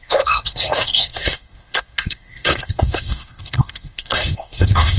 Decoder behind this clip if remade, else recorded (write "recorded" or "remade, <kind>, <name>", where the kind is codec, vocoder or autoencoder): remade, codec, SNAC